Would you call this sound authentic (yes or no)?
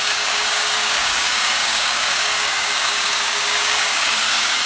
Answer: no